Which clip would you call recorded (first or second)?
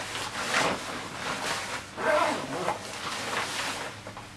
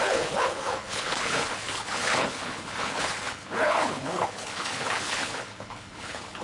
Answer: first